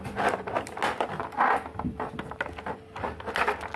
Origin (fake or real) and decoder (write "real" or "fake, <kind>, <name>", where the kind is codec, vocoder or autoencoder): real